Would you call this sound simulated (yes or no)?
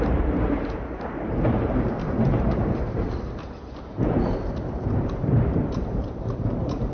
yes